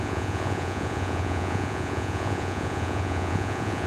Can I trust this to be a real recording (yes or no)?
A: no